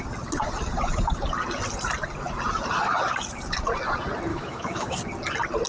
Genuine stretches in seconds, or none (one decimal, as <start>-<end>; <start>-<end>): 0.0-4.3; 5.0-5.7